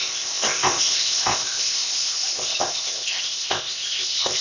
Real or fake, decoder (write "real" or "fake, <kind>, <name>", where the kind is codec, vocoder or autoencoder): fake, codec, ZipCodec